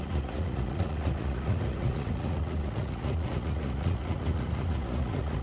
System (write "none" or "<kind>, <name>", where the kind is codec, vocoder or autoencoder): vocoder, Vocos